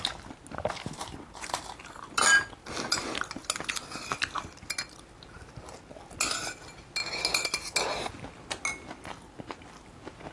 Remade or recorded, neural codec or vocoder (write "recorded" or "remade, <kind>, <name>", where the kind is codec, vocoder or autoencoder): recorded